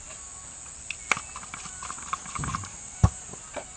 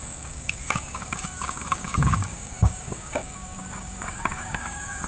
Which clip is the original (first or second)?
first